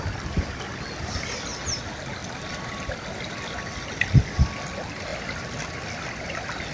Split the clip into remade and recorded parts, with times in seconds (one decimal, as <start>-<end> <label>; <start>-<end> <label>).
0.0-6.7 recorded